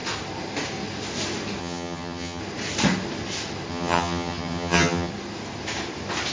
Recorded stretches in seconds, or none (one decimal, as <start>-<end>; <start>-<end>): 0.0-1.6; 2.4-3.7; 5.1-6.3